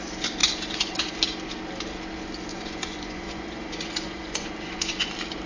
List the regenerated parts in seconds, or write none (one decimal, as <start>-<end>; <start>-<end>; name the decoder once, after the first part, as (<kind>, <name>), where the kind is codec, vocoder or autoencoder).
0.4-1.1 (vocoder, Vocos); 2.5-5.1